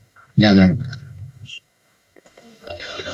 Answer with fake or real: fake